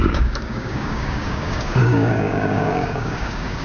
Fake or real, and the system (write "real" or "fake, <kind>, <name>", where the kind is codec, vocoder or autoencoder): fake, codec, DAC